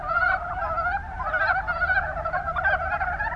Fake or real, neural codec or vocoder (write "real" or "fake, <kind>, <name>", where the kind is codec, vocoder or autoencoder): real